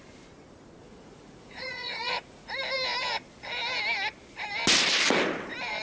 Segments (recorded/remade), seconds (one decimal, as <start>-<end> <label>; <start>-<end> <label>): 0.0-0.8 recorded; 0.8-2.5 remade; 2.5-5.8 recorded